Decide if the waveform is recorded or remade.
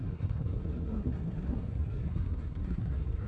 remade